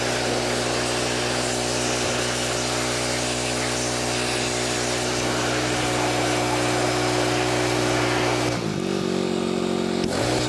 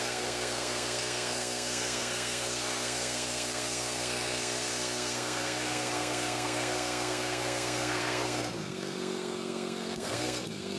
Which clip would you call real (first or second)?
first